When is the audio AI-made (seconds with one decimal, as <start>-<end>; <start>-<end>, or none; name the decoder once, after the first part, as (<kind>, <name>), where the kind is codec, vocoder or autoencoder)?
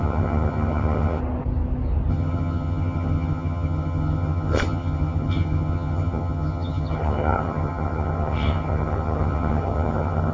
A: 0.0-1.2 (vocoder, HiFi-GAN); 2.1-10.3